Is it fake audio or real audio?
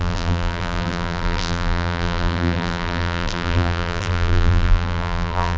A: fake